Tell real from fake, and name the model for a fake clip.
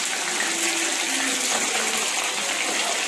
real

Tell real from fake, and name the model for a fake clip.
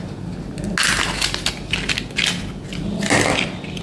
real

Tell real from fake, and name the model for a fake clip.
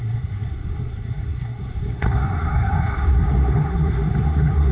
fake, codec, SNAC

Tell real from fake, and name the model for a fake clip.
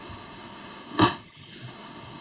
fake, codec, HILCodec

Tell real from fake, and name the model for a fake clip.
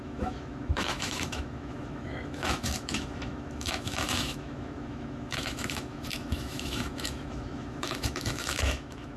fake, autoencoder, DAC-VAE